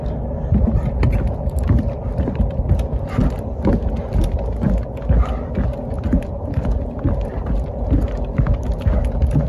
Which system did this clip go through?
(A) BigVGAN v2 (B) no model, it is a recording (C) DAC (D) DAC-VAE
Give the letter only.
B